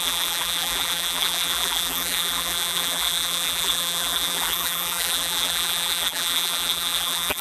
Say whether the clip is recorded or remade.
remade